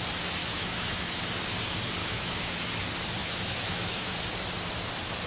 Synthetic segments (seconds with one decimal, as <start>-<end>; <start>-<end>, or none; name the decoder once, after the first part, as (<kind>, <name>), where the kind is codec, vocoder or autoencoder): 0.4-1.2 (autoencoder, DAC-VAE); 2.0-2.6; 3.2-4.1